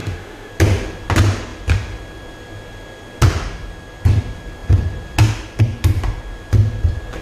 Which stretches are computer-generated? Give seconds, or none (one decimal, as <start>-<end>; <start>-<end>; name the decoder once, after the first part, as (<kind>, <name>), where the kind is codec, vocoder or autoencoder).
0.0-0.5 (autoencoder, DAC-VAE)

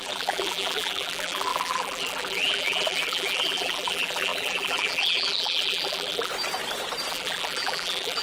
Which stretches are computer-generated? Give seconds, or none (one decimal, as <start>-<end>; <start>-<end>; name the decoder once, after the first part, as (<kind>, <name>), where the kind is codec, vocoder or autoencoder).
0.0-6.3 (vocoder, BigVGAN v2); 7.1-8.2